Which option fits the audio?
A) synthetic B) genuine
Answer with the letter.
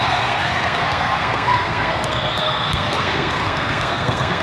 A